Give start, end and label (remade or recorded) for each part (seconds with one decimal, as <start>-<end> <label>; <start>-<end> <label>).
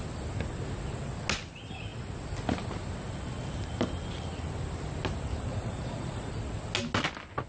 0.0-5.5 recorded; 5.5-6.3 remade; 6.3-7.5 recorded